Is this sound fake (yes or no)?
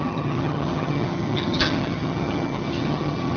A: yes